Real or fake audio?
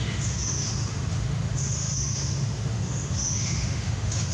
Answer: fake